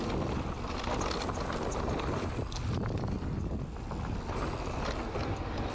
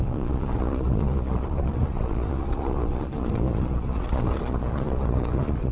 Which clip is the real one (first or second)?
first